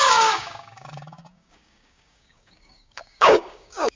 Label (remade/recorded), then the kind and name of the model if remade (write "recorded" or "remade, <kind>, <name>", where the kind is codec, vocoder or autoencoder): remade, codec, DAC